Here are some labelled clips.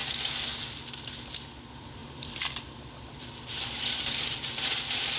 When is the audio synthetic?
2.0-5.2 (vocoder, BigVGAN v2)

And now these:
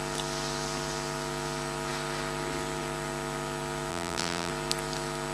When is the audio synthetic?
3.9-4.5 (vocoder, BigVGAN v2)